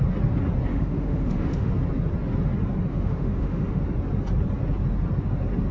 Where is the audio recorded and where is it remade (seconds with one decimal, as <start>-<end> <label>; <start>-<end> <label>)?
0.0-0.7 recorded; 0.7-1.7 remade; 1.7-2.9 recorded; 2.9-3.8 remade; 3.8-5.7 recorded